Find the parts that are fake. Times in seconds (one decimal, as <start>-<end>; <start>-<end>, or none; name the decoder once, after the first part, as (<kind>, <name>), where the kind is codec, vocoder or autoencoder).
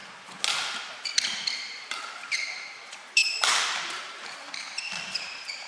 1.6-5.7 (vocoder, BigVGAN v2)